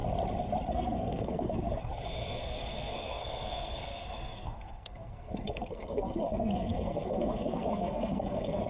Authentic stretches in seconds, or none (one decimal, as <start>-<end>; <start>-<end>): 0.0-0.7; 1.9-2.4